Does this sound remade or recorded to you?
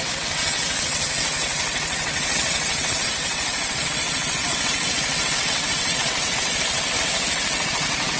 remade